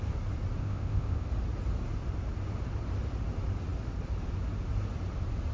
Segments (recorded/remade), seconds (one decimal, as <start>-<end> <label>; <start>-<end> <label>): 0.0-0.6 recorded; 0.6-1.3 remade; 1.3-5.5 recorded

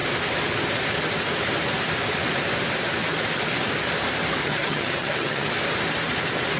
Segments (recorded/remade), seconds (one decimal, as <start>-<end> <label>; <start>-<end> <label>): 0.0-4.4 recorded; 4.4-5.5 remade; 5.5-6.6 recorded

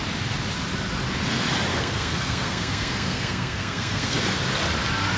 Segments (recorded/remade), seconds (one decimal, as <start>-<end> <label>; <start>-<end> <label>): 0.0-1.7 recorded; 1.7-4.2 remade; 4.2-5.2 recorded

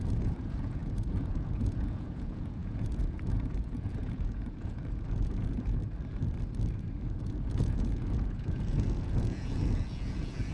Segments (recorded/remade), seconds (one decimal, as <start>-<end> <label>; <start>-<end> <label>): 0.0-5.8 remade; 5.8-7.0 recorded; 7.0-10.5 remade

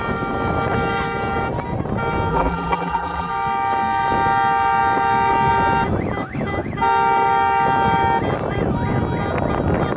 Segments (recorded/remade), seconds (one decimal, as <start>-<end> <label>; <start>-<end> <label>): 0.0-2.3 recorded; 2.3-3.3 remade; 3.3-10.0 recorded

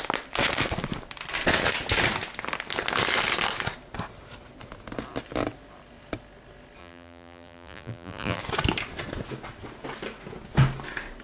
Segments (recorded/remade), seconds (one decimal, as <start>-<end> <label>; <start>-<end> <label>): 0.0-6.8 recorded; 6.8-8.4 remade; 8.4-11.2 recorded

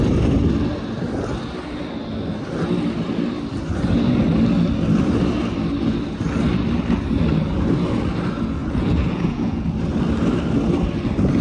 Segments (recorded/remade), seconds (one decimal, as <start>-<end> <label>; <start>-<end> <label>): 0.0-8.6 recorded; 8.6-9.6 remade; 9.6-11.4 recorded